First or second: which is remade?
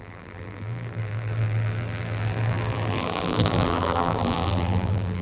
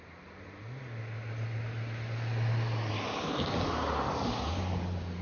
first